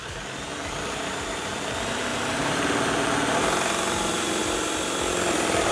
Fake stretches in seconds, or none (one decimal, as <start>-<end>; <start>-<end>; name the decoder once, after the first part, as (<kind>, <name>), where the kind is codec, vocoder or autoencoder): 0.0-0.5 (vocoder, BigVGAN v2); 1.4-5.7

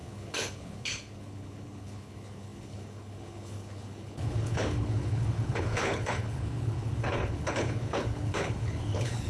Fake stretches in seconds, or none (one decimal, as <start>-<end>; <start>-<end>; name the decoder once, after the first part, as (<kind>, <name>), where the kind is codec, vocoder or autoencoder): 0.0-9.3 (codec, HILCodec)